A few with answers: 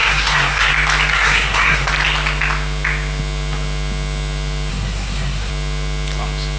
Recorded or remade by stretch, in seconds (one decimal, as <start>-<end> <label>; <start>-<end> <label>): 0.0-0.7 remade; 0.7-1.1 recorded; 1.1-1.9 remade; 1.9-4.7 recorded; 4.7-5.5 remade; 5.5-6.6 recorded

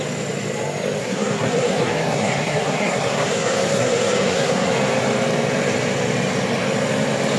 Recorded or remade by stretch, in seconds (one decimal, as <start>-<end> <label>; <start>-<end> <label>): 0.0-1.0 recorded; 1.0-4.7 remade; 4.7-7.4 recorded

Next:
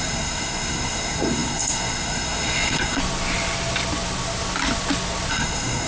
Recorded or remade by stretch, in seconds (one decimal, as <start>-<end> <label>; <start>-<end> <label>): 0.0-3.0 remade; 3.0-5.3 recorded; 5.3-5.9 remade